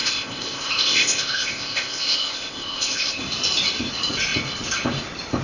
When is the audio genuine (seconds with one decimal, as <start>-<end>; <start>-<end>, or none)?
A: 3.2-5.4